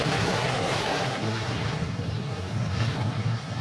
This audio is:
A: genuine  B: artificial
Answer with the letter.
B